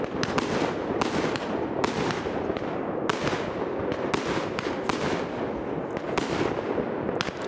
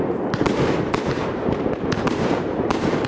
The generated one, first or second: second